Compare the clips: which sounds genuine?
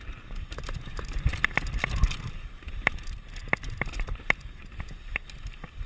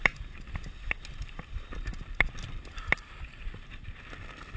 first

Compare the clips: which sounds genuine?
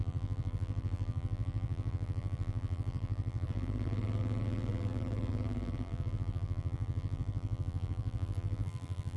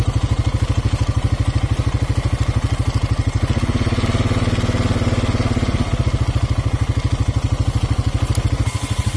second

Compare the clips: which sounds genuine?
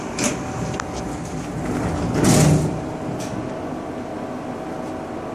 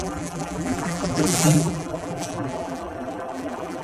first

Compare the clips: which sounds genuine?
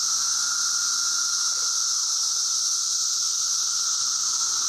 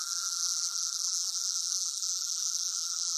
first